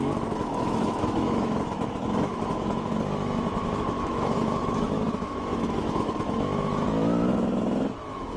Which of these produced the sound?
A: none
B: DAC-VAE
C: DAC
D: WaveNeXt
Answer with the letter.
B